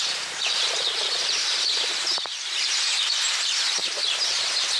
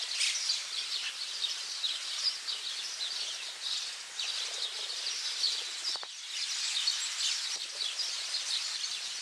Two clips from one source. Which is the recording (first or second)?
second